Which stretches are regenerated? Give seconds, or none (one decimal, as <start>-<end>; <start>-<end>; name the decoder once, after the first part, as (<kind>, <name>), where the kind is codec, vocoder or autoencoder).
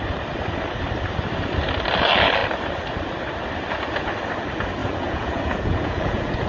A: 4.8-6.5 (vocoder, Vocos)